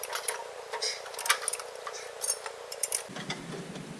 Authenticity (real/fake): real